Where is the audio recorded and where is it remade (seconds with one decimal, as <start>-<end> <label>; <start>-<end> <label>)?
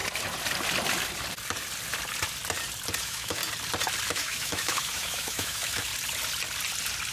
0.0-3.0 recorded; 3.0-3.4 remade; 3.4-4.1 recorded; 4.1-5.9 remade; 5.9-7.1 recorded